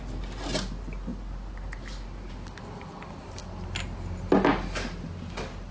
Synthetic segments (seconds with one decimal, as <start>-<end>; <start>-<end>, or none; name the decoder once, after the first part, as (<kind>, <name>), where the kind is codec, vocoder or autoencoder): none